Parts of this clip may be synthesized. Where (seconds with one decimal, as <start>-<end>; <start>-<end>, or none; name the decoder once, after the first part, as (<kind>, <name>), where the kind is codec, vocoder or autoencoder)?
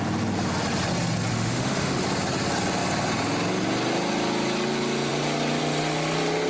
1.3-2.0 (autoencoder, DAC-VAE)